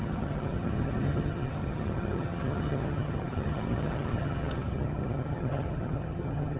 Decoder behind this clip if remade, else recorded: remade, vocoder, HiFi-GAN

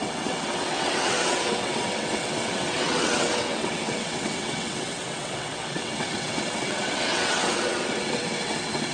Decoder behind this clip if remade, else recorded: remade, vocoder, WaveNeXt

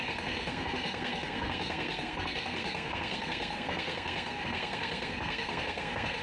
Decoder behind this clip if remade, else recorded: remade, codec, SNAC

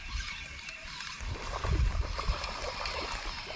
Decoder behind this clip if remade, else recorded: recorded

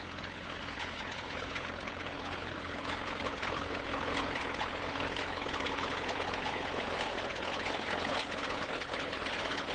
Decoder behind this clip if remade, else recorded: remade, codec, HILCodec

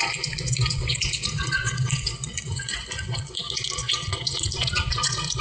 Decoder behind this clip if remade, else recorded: remade, vocoder, Vocos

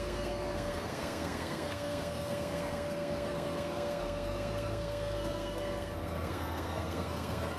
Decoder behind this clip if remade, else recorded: remade, codec, SNAC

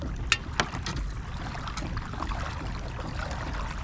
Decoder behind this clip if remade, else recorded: recorded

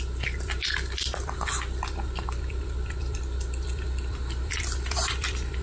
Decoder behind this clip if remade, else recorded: remade, vocoder, BigVGAN v2